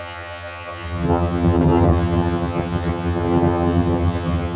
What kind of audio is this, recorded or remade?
remade